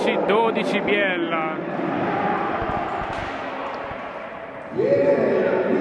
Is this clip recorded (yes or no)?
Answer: yes